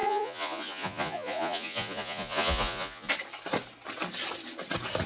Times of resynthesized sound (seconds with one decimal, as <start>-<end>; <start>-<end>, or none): 0.0-3.1

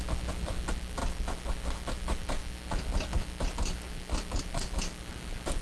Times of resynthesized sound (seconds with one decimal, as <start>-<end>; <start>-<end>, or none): none

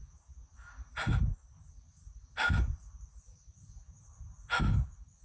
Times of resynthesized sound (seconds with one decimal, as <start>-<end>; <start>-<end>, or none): none

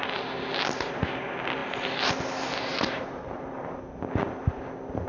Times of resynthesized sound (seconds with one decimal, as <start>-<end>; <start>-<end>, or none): 2.7-3.8

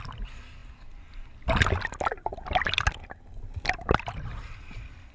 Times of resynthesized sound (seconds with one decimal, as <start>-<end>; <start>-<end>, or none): none

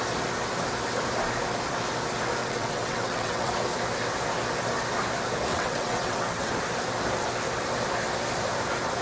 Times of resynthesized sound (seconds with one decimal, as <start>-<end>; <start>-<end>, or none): 2.4-3.5; 5.5-6.5

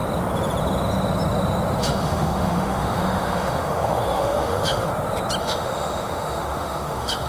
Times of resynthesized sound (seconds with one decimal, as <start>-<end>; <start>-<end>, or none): 1.8-4.9; 5.4-7.3